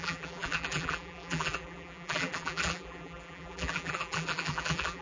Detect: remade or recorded remade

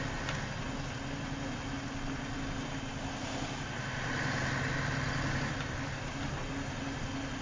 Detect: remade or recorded recorded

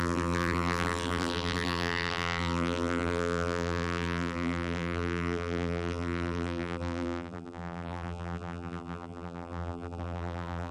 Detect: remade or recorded remade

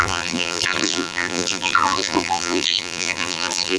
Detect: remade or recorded remade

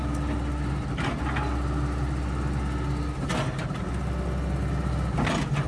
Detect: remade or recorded recorded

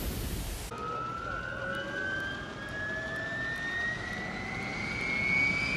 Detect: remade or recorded recorded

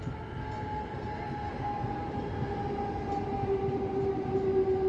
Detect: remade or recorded recorded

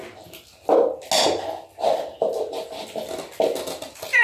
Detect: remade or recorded recorded